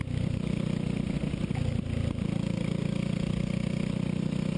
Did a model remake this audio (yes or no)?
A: no